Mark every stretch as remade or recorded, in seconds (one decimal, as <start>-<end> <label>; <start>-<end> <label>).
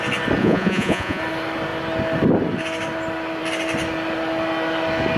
0.0-0.4 recorded; 0.4-1.2 remade; 1.2-5.2 recorded